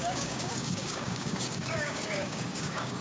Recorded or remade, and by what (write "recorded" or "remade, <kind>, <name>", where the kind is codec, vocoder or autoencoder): remade, codec, DAC